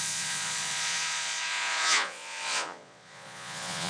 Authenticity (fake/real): fake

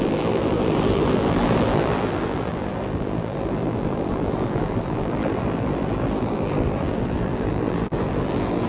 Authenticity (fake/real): fake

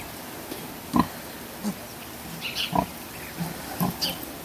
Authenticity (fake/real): real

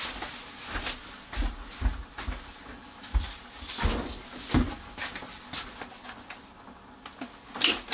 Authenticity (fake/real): real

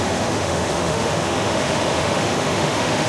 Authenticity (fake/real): fake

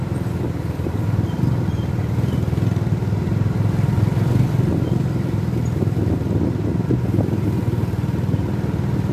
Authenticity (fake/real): real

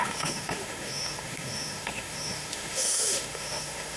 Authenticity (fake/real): fake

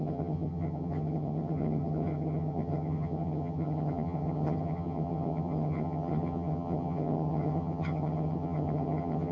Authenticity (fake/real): fake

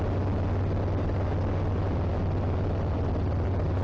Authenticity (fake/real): real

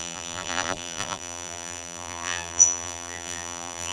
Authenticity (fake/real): fake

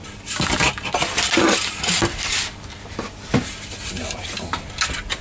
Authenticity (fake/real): real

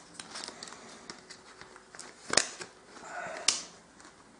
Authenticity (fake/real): real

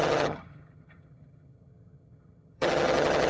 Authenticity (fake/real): fake